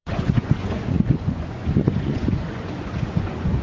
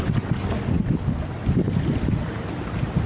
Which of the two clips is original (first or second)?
second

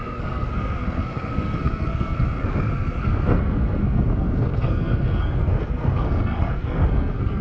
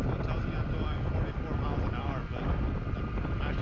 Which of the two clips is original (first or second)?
second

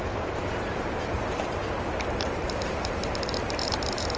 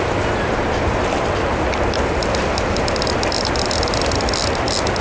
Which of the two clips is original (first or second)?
second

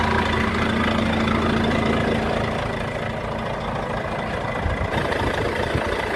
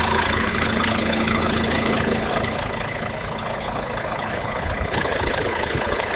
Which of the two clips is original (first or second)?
first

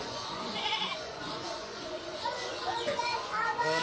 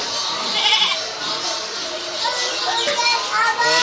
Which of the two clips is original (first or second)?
second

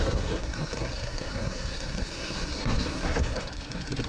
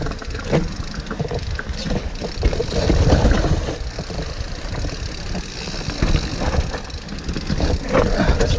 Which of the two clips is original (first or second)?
second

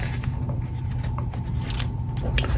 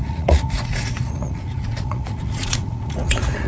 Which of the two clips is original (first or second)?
first